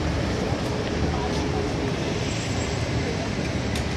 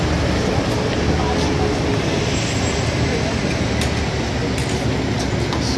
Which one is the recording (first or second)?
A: second